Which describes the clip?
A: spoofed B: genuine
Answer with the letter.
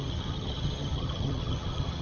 A